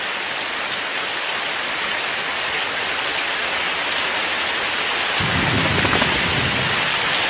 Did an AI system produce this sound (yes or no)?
no